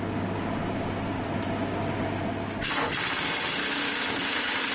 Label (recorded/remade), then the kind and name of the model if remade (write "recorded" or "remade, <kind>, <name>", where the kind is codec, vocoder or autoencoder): recorded